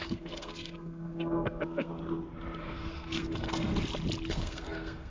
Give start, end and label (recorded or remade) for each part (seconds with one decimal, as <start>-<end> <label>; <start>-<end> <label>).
0.0-1.9 remade; 1.9-2.6 recorded; 2.6-3.7 remade; 3.7-4.3 recorded; 4.3-5.1 remade